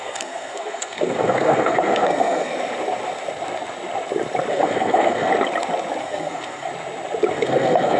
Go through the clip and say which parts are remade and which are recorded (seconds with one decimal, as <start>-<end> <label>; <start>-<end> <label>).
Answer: 0.0-2.5 remade; 2.5-4.5 recorded; 4.5-5.3 remade; 5.3-6.0 recorded; 6.0-6.7 remade; 6.7-7.3 recorded; 7.3-8.0 remade